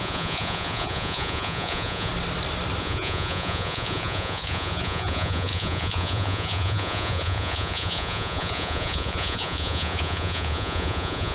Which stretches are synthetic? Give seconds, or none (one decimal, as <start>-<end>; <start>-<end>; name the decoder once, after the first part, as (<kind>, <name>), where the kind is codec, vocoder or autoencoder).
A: 0.0-2.1 (vocoder, Vocos); 2.8-11.3